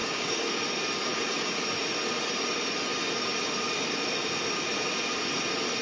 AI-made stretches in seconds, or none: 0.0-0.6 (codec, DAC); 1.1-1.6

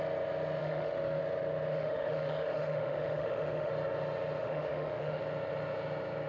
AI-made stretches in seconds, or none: 0.6-1.2 (autoencoder, DAC-VAE); 1.7-3.7; 4.4-5.2